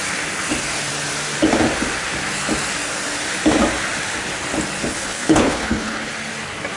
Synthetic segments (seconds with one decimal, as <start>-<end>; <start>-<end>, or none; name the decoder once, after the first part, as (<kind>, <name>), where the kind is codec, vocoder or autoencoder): 4.9-6.1 (codec, HILCodec)